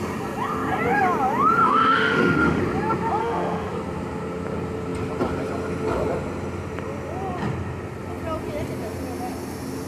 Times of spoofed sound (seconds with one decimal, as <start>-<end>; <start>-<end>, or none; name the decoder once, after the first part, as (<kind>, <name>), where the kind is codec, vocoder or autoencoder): 1.6-2.6 (autoencoder, DAC-VAE); 3.2-3.7